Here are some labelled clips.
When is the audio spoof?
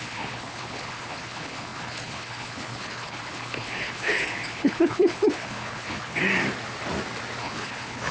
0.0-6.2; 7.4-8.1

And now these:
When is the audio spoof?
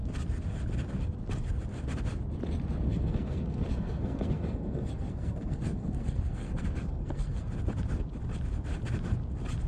2.9-7.5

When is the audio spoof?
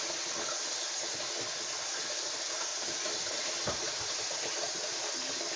2.7-5.1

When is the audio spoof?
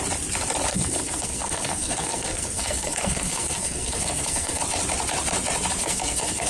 0.7-4.6; 5.8-6.5